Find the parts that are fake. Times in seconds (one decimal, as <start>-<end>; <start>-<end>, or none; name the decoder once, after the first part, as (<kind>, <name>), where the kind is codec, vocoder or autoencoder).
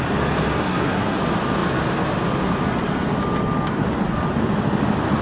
0.6-1.2 (codec, SNAC)